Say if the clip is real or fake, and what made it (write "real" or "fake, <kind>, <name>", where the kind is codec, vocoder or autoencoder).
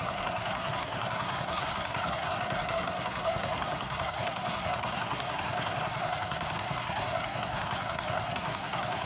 fake, codec, SNAC